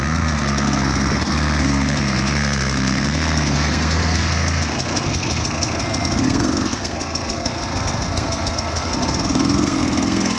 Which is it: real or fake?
fake